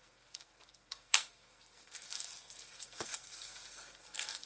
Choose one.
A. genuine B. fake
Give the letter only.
B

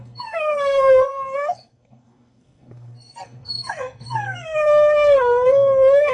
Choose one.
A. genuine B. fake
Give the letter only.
B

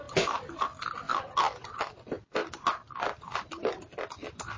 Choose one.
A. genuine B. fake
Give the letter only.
A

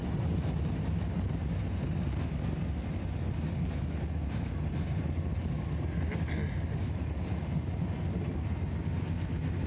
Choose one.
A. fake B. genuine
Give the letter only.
B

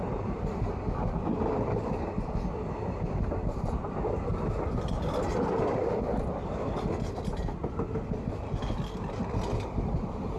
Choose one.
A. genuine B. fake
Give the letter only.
A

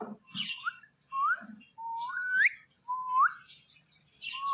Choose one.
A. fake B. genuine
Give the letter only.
B